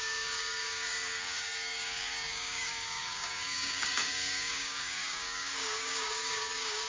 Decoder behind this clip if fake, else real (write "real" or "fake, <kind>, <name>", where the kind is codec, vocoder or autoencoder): fake, codec, DAC